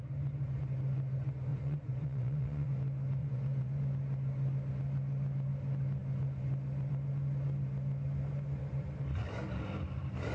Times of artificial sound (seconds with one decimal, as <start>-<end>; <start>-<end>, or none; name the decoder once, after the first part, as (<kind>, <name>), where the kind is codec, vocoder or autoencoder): 1.5-2.7 (vocoder, Vocos); 3.2-3.8